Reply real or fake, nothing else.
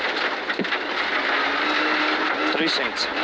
real